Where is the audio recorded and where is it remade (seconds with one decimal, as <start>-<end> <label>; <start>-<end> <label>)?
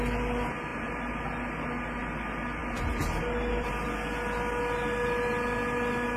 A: 0.0-6.2 recorded